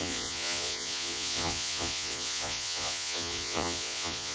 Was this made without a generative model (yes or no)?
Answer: no